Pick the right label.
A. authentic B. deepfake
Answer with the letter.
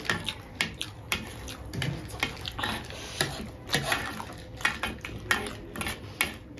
A